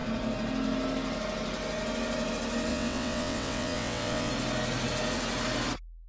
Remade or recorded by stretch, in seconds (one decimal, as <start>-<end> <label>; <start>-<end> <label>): 0.0-2.7 recorded; 2.7-4.3 remade; 4.3-6.1 recorded